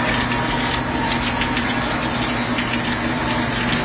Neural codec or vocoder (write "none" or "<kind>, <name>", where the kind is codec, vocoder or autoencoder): none